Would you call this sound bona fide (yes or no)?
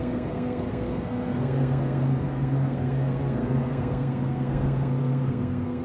no